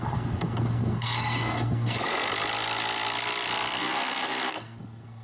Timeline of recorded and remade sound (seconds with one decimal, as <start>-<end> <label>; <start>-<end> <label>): 0.0-2.3 remade; 2.3-3.8 recorded; 3.8-5.2 remade